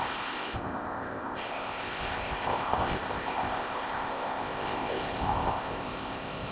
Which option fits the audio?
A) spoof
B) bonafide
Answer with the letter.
A